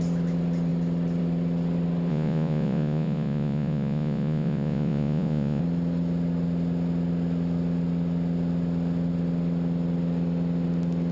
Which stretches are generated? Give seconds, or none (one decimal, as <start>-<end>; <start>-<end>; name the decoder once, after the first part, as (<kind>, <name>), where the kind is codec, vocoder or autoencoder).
2.1-5.6 (vocoder, Vocos)